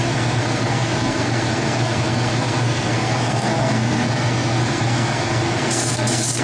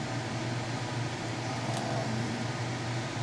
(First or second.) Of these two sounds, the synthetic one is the first